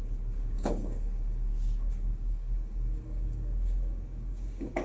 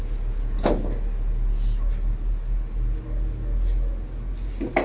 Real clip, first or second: second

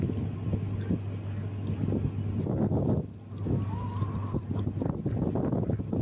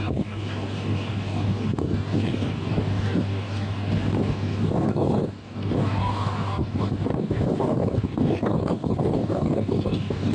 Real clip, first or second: first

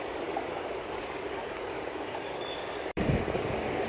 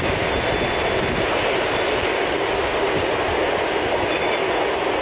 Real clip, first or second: second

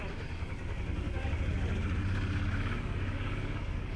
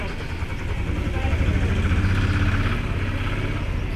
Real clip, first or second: second